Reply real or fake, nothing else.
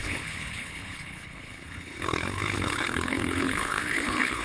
fake